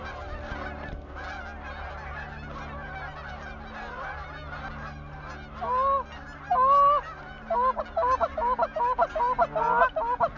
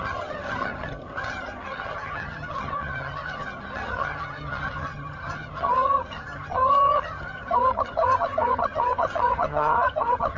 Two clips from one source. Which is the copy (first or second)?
second